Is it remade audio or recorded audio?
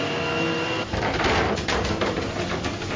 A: recorded